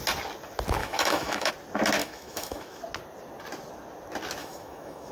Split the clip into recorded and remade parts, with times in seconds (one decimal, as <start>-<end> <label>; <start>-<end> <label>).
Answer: 0.0-0.8 recorded; 0.8-1.5 remade; 1.5-2.0 recorded; 2.0-2.8 remade; 2.8-4.4 recorded; 4.4-5.1 remade